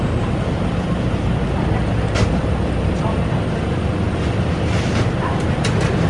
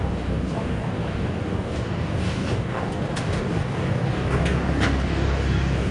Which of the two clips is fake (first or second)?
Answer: second